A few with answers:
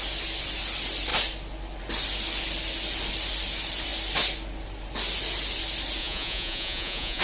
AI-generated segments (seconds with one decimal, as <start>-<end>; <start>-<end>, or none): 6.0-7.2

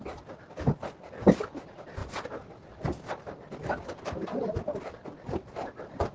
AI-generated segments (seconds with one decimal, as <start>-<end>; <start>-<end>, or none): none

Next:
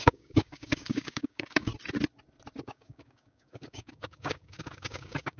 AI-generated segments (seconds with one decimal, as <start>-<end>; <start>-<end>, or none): 0.0-1.7; 2.6-5.4

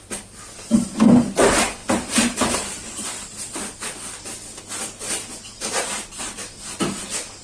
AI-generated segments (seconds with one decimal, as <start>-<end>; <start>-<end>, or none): none